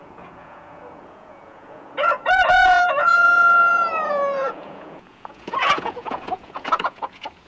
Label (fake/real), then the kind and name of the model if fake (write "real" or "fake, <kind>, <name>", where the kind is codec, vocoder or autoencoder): fake, vocoder, Vocos